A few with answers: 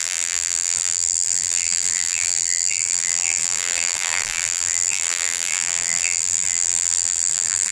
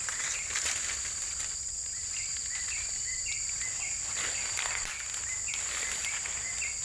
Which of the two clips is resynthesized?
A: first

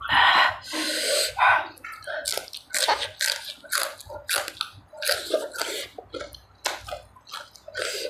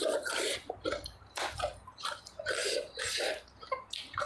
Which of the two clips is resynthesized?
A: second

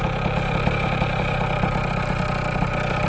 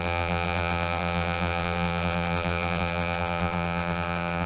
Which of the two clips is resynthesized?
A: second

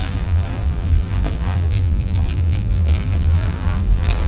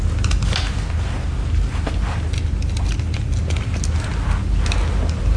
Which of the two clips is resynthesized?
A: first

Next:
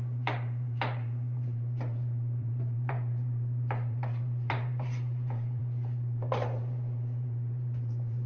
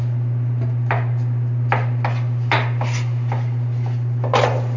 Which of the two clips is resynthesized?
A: first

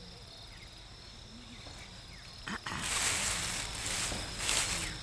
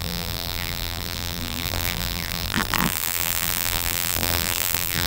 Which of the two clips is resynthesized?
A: second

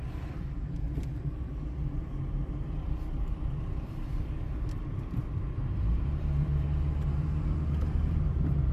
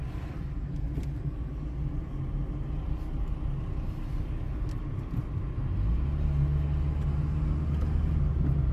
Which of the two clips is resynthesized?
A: first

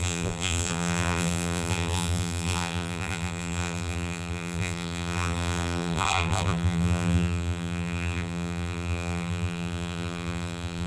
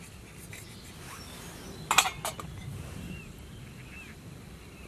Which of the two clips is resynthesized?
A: first